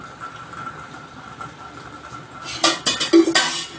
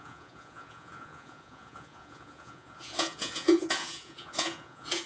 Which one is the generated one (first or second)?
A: second